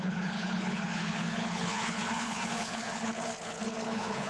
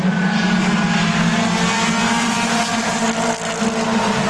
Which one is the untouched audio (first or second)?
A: second